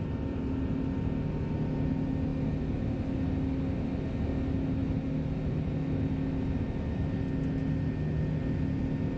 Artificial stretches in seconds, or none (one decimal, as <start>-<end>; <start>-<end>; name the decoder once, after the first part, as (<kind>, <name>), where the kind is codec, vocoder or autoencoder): none